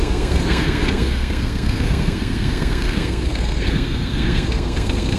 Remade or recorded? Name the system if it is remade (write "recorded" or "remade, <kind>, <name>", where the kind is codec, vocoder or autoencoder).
remade, codec, SNAC